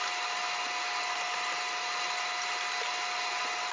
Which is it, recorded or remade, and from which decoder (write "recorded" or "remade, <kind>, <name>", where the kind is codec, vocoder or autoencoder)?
recorded